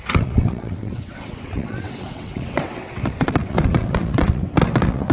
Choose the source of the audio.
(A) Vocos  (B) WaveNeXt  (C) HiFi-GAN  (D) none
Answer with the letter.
B